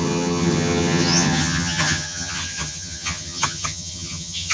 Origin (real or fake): fake